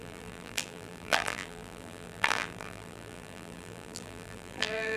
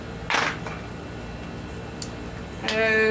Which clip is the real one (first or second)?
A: second